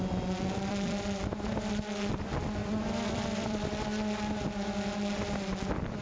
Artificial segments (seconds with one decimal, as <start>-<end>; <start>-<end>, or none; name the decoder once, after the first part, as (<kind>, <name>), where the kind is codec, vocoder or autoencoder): 2.6-3.7 (vocoder, BigVGAN v2)